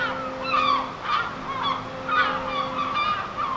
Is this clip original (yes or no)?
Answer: yes